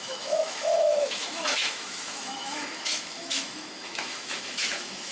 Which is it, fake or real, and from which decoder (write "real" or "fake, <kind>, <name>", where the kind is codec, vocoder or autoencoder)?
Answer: fake, autoencoder, DAC-VAE